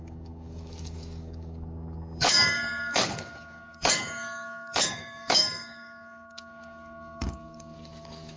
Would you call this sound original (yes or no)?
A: no